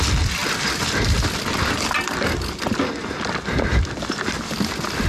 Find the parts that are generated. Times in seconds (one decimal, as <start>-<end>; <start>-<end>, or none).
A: none